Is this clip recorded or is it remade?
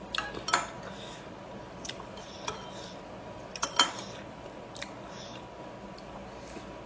recorded